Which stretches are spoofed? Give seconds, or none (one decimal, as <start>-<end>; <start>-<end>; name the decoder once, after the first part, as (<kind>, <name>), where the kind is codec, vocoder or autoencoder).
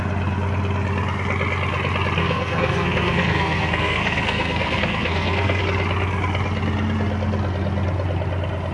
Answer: 2.2-5.6 (codec, SNAC)